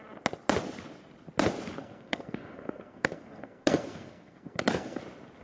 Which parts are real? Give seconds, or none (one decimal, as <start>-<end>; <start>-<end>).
0.0-1.8; 5.0-5.4